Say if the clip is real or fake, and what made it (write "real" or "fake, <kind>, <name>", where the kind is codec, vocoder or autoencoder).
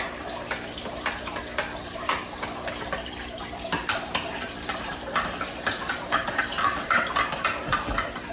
fake, vocoder, BigVGAN v2